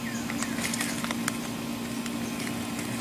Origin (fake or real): real